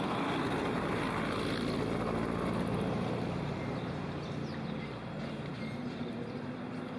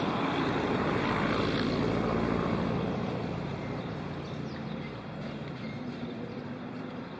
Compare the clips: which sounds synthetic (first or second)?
second